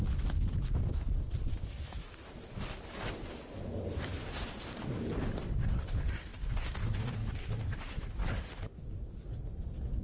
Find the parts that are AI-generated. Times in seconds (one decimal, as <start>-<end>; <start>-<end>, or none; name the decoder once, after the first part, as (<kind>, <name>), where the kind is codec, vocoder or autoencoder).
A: 1.5-2.2 (autoencoder, DAC-VAE)